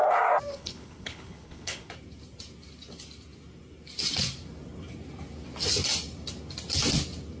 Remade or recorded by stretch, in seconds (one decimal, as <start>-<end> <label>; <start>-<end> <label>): 0.0-0.5 recorded; 0.5-1.9 remade; 1.9-7.4 recorded